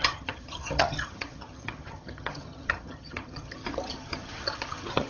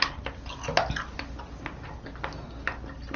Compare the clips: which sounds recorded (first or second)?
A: second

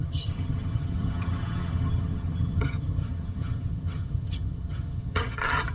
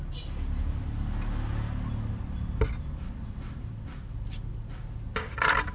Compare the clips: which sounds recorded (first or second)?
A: second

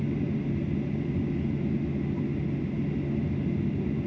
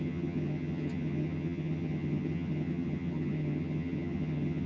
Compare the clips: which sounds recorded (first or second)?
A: first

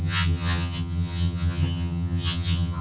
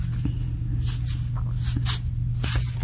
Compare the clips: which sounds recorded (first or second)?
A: second